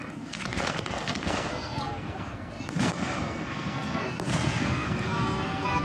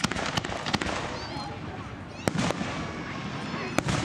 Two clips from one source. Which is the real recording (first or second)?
second